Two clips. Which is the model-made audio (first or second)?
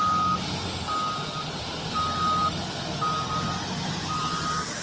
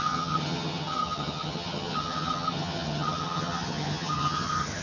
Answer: second